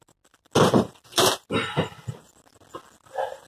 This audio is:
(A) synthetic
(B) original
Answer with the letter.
B